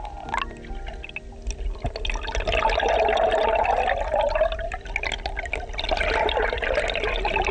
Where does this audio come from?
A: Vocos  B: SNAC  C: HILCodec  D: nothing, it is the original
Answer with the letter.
D